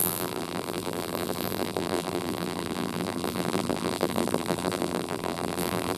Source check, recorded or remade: remade